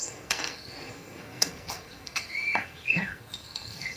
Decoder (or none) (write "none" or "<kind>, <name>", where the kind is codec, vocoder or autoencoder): codec, SNAC